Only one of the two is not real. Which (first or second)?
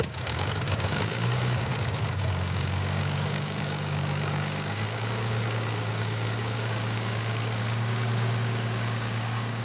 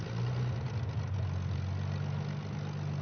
first